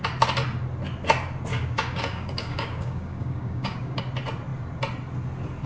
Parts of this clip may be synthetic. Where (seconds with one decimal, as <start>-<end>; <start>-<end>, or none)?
1.5-4.0